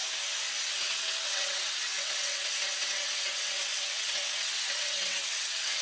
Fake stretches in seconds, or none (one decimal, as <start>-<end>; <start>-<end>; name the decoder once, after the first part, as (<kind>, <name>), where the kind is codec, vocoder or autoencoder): 0.7-5.8 (vocoder, WaveNeXt)